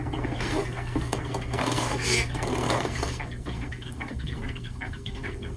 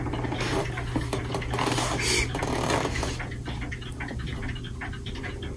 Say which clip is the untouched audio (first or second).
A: second